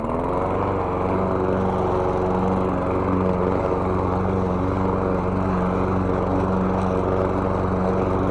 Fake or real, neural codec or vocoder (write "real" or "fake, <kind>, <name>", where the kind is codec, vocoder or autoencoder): real